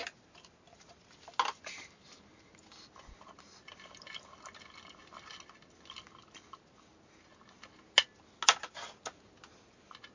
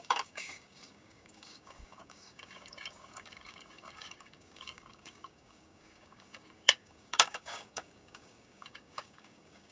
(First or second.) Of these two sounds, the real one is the first